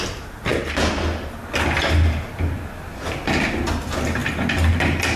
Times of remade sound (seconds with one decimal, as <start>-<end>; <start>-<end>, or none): none